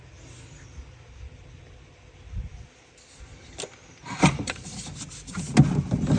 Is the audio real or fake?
real